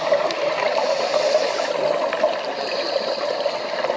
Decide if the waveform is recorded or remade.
remade